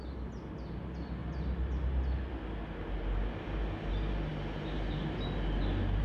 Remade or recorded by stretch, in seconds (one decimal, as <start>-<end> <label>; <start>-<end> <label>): 0.0-6.0 recorded